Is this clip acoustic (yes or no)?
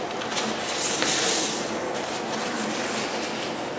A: yes